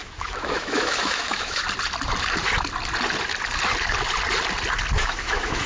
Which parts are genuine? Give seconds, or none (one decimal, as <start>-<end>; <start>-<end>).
1.6-5.0